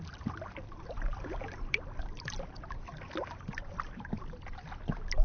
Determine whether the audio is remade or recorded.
recorded